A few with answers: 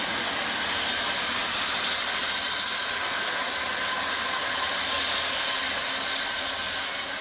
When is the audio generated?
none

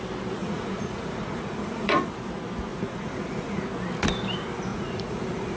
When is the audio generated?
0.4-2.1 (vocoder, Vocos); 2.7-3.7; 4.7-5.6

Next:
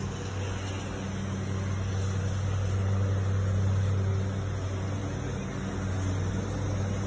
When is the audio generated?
none

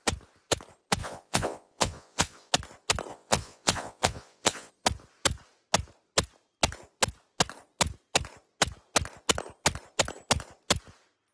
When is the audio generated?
1.0-2.5 (vocoder, Vocos); 3.1-4.7